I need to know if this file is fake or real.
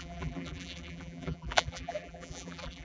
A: fake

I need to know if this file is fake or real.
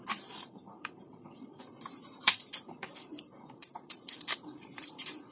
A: fake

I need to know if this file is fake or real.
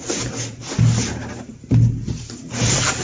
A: real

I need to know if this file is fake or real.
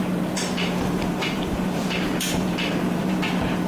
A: fake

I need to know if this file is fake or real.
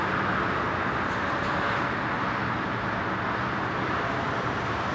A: real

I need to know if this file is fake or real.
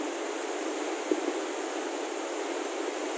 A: real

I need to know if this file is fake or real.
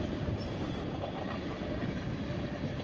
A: fake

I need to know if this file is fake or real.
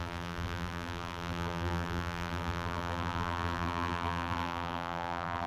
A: fake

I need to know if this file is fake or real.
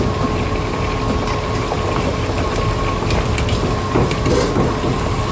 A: real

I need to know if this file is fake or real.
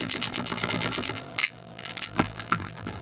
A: fake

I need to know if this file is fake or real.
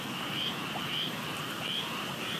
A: fake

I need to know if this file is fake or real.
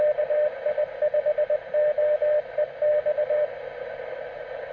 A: real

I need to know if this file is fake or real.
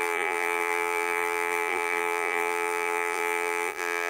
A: fake